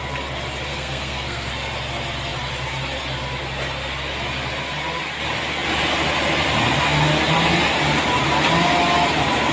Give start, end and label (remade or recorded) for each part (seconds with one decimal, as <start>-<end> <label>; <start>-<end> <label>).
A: 0.0-0.7 recorded; 0.7-1.5 remade; 1.5-9.5 recorded